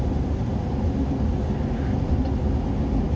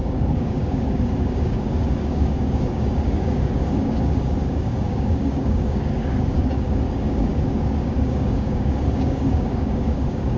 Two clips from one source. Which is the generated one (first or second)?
second